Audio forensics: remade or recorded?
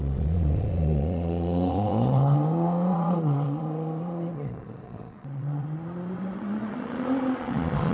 remade